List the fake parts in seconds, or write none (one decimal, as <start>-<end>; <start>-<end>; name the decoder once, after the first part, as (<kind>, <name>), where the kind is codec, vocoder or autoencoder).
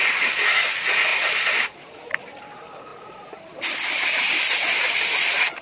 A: 1.1-2.0 (vocoder, BigVGAN v2)